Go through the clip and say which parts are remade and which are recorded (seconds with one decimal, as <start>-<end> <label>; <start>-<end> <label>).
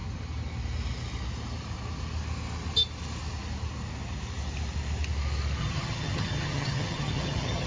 0.0-5.6 recorded; 5.6-7.7 remade